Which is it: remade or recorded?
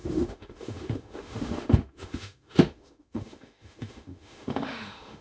remade